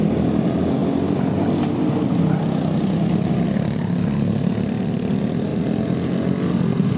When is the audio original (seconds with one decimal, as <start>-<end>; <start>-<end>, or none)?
0.0-7.0